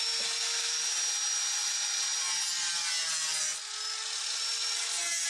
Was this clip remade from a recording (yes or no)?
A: no